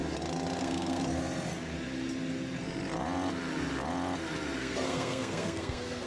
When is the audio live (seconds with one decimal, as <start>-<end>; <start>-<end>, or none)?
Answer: 0.0-0.6; 1.0-4.6